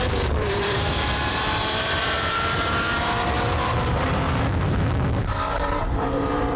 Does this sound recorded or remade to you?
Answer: remade